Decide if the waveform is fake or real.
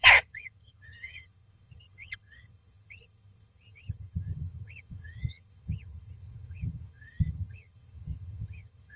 fake